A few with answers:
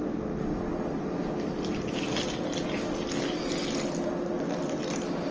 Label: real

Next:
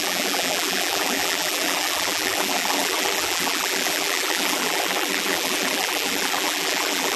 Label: fake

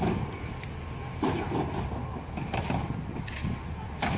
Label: real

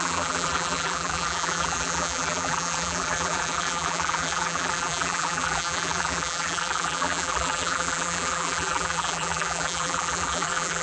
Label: fake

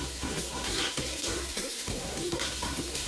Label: fake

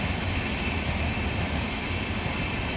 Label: real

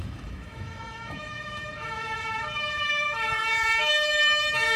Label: fake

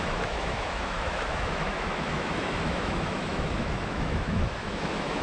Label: fake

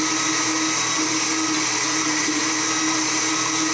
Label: real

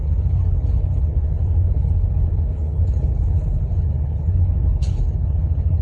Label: fake